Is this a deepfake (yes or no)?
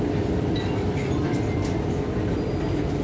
no